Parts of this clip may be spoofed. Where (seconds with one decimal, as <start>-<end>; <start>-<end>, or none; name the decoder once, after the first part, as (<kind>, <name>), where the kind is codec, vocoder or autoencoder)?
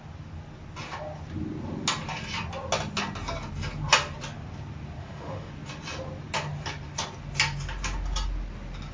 5.0-5.5 (autoencoder, DAC-VAE)